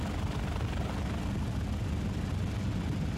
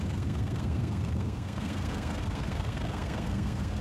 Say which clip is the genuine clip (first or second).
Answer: first